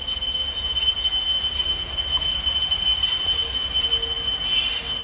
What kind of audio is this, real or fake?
real